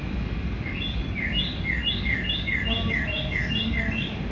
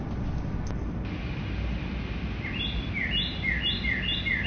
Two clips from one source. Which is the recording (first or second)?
second